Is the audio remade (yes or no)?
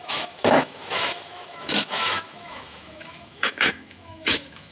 yes